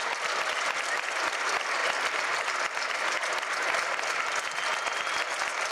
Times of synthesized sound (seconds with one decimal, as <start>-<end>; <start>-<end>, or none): none